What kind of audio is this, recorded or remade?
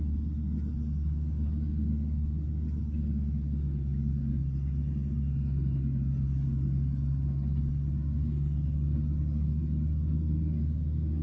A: recorded